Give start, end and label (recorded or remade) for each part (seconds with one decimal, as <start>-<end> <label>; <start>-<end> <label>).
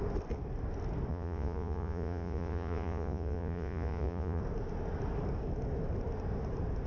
0.0-1.1 recorded; 1.1-4.4 remade; 4.4-6.9 recorded